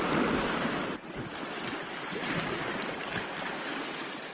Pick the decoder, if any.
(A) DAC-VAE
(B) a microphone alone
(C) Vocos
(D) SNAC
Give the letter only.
B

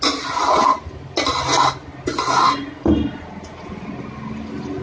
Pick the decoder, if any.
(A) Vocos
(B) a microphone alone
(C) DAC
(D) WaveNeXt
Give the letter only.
B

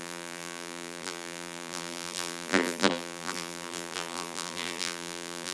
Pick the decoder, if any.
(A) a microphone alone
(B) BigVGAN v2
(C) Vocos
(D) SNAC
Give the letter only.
B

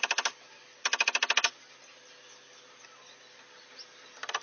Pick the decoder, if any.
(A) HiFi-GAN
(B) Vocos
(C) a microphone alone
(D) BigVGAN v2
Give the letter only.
C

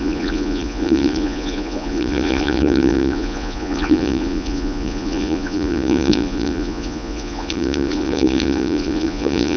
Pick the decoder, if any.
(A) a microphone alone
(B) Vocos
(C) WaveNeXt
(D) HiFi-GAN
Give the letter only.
B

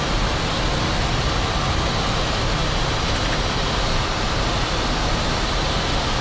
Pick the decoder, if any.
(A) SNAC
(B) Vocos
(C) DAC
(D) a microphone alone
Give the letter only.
D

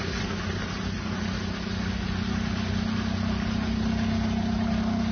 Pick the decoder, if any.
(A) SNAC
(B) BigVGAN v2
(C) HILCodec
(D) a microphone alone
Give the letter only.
D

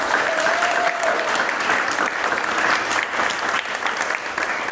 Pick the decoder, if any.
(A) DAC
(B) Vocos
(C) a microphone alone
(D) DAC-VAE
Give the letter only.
C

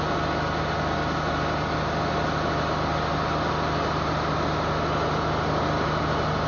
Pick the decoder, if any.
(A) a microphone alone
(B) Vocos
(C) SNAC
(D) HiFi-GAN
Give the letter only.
A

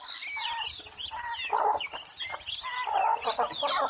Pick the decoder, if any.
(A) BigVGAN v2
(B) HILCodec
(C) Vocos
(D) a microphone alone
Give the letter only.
D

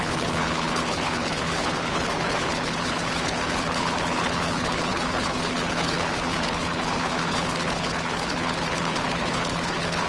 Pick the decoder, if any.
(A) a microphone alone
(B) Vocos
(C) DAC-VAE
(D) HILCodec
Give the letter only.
D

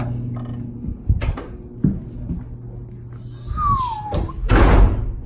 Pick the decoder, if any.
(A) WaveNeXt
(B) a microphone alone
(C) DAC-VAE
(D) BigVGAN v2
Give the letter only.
B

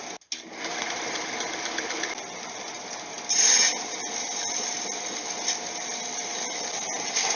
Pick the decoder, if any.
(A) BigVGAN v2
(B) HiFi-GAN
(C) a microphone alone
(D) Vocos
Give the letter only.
C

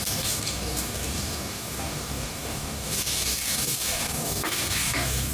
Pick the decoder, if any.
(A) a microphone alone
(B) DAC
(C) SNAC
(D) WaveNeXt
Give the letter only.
B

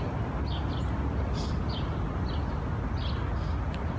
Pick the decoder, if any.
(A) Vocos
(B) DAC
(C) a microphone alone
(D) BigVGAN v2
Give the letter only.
C